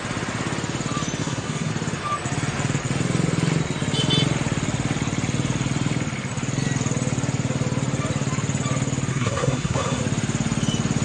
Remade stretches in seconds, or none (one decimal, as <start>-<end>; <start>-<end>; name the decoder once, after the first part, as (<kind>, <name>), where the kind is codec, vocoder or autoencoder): 1.2-1.7 (codec, SNAC); 9.1-10.0